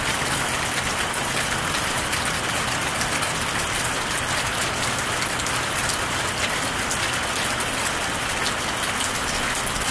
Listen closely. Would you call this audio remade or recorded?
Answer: recorded